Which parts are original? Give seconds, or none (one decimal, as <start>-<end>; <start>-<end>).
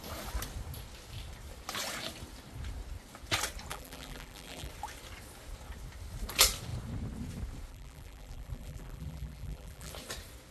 0.0-3.7; 4.7-7.7; 9.9-10.5